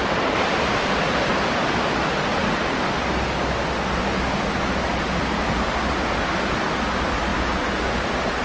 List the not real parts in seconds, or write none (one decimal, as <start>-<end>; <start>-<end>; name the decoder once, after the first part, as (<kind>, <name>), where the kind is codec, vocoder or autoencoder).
none